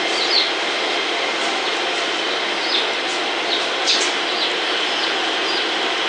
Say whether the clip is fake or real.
real